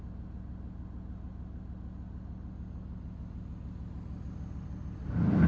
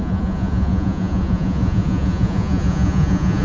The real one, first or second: first